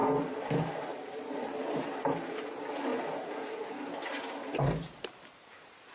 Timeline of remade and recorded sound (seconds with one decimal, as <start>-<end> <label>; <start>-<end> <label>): 0.0-2.9 recorded; 2.9-3.7 remade; 3.7-5.9 recorded